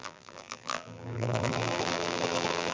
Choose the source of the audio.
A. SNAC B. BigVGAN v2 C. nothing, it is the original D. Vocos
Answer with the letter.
B